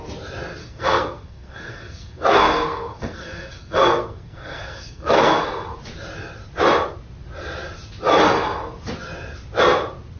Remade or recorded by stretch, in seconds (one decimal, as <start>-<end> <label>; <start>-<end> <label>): 0.0-0.6 recorded; 0.6-5.4 remade; 5.4-10.2 recorded